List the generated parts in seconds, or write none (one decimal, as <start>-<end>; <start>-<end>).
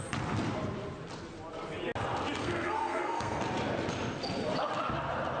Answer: 2.4-3.4